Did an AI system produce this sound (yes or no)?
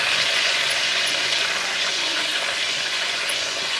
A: yes